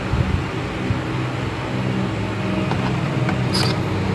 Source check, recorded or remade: recorded